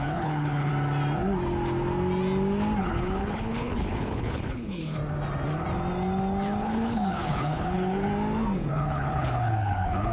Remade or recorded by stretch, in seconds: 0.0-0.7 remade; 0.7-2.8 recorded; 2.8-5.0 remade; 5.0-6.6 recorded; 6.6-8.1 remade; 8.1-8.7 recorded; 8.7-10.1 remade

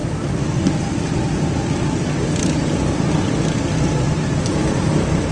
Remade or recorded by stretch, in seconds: 0.0-5.3 recorded

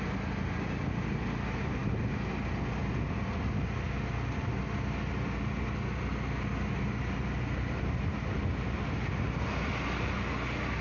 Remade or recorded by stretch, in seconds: 0.0-10.8 recorded

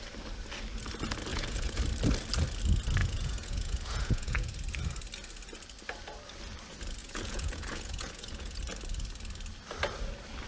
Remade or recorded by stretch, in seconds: 0.0-1.3 recorded; 1.3-1.8 remade; 1.8-3.0 recorded; 3.0-4.5 remade; 4.5-7.0 recorded; 7.0-8.6 remade; 8.6-10.5 recorded

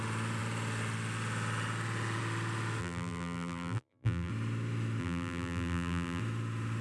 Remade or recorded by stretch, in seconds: 0.0-2.8 recorded; 2.8-4.3 remade; 4.3-5.0 recorded; 5.0-6.2 remade; 6.2-6.8 recorded